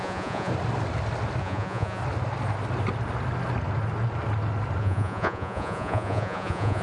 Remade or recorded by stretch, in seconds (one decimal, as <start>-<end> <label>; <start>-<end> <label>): 0.0-0.5 remade; 0.5-1.4 recorded; 1.4-2.0 remade; 2.0-4.8 recorded; 4.8-6.8 remade